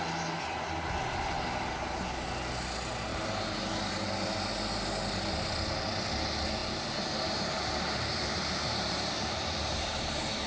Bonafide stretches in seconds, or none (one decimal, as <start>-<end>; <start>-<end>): 0.0-3.1; 3.6-6.6